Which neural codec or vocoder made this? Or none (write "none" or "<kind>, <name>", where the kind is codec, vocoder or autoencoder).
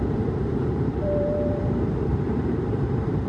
vocoder, BigVGAN v2